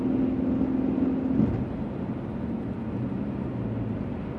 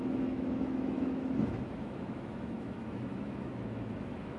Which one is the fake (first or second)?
second